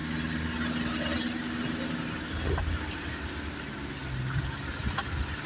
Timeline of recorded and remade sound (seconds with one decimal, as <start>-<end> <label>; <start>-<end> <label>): 0.0-5.5 recorded